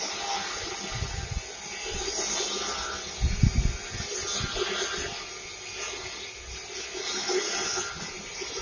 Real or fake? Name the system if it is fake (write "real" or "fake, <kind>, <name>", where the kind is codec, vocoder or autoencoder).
real